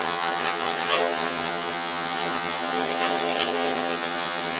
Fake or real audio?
fake